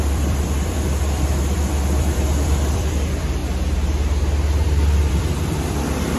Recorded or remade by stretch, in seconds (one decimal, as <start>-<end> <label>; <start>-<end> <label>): 0.0-3.4 remade; 3.4-5.1 recorded; 5.1-6.2 remade